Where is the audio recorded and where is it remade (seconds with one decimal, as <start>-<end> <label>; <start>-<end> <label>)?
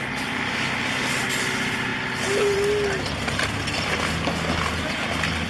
0.0-5.5 recorded